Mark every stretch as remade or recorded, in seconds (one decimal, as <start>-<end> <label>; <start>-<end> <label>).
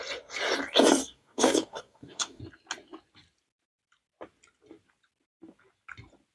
0.0-1.0 recorded; 1.0-2.4 remade; 2.4-6.3 recorded